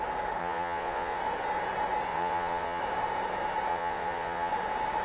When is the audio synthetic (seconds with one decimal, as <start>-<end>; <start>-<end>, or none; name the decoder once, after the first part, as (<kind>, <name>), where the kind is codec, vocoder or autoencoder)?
0.4-1.2 (vocoder, Vocos); 2.1-2.8; 3.7-4.5